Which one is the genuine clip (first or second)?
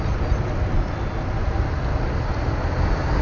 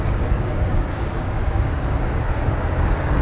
first